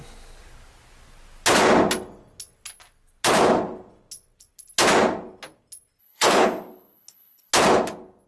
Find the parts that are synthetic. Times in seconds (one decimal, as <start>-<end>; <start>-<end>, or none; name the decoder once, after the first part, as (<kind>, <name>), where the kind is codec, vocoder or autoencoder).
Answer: 6.0-7.5 (codec, HILCodec)